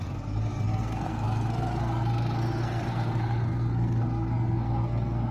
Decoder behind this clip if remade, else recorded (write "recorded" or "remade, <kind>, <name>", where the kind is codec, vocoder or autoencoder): remade, codec, SNAC